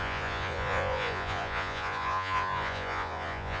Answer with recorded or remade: remade